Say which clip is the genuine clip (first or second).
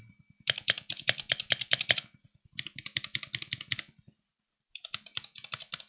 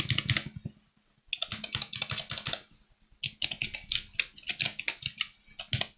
second